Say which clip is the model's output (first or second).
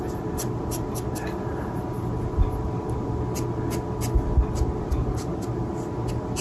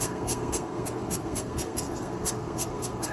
second